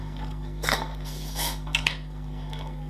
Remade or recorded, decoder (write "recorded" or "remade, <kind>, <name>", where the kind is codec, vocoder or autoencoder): remade, codec, SNAC